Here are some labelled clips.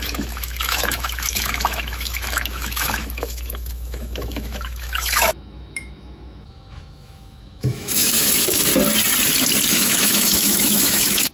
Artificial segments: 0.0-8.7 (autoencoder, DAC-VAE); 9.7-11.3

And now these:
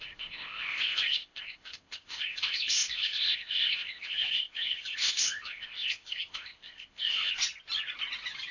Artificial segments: 0.0-7.3 (codec, ZipCodec)

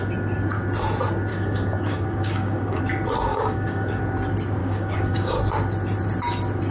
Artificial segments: 1.3-2.8 (codec, DAC); 3.3-4.0; 4.6-5.4

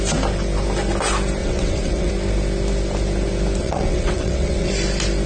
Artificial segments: 1.4-2.1 (vocoder, WaveNeXt); 3.6-4.7